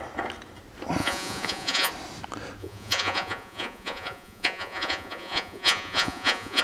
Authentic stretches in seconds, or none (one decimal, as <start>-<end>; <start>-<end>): 0.0-1.0; 1.9-2.6